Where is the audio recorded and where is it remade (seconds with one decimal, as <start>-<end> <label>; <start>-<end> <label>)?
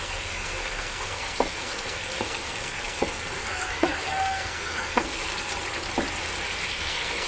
0.0-5.5 remade; 5.5-6.7 recorded; 6.7-7.3 remade